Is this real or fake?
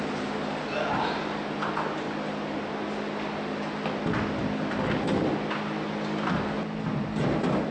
real